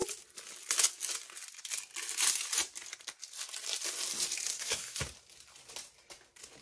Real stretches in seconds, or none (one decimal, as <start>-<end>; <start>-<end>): 0.0-4.5; 5.0-6.6

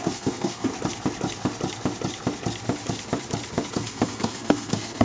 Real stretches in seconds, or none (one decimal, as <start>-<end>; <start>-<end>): 0.7-3.7

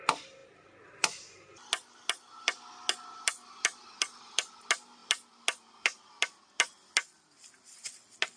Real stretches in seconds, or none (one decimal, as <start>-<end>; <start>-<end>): 0.0-8.4

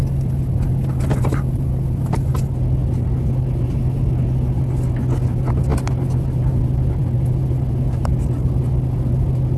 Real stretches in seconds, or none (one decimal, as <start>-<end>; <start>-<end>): 0.0-9.6

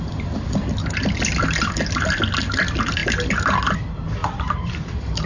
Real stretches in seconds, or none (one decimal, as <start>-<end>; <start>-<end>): 0.0-4.2

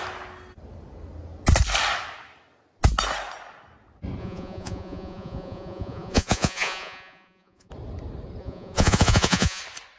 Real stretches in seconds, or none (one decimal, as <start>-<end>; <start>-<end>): 0.0-4.2; 7.7-8.4; 9.6-10.0

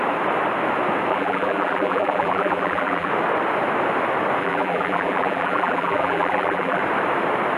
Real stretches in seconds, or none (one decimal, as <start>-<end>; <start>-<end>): 0.0-1.1; 3.1-4.4; 6.8-7.6

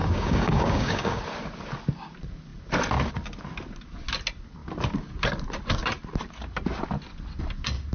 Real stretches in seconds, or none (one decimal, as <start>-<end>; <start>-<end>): 1.2-7.9